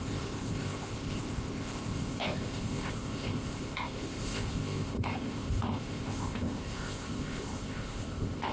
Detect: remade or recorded remade